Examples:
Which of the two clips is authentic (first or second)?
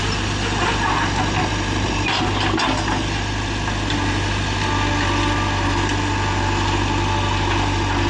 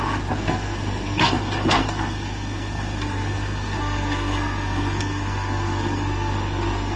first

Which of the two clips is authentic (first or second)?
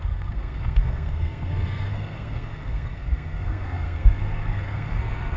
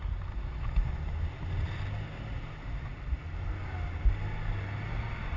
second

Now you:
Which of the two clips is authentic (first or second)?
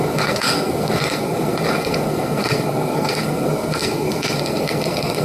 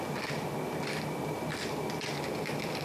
second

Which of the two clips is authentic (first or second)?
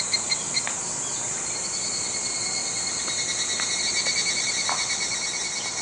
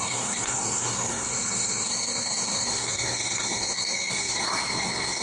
first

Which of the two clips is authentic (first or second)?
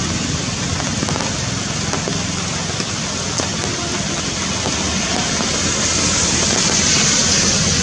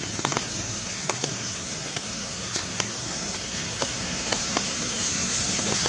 first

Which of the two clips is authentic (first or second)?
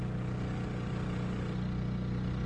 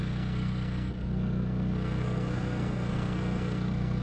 first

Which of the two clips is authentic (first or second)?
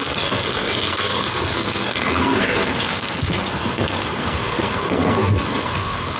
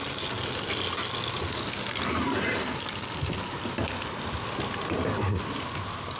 second